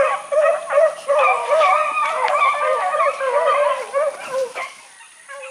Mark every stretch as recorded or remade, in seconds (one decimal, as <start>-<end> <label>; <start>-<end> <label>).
0.0-5.5 recorded